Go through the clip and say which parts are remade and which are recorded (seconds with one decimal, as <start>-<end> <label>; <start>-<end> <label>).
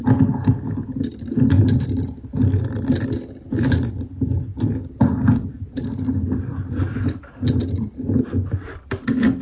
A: 0.0-9.4 recorded